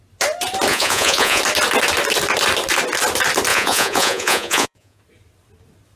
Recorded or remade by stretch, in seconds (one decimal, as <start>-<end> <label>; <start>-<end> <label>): 0.0-0.7 recorded; 0.7-1.4 remade; 1.4-3.5 recorded; 3.5-5.0 remade; 5.0-6.0 recorded

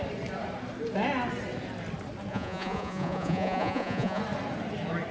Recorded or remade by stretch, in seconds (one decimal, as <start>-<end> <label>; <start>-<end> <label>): 0.0-2.3 recorded; 2.3-4.2 remade; 4.2-5.1 recorded

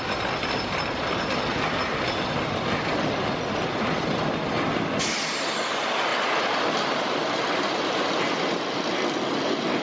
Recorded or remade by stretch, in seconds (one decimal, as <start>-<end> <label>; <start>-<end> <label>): 0.0-9.8 recorded